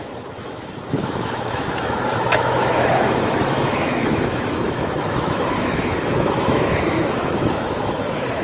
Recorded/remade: remade